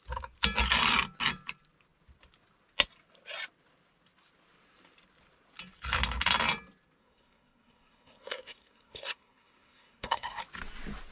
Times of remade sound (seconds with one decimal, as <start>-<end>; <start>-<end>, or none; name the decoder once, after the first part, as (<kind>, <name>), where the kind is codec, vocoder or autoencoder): 7.0-10.4 (codec, SNAC)